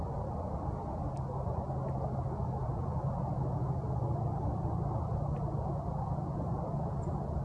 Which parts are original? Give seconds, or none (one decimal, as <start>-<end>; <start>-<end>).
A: 0.0-7.4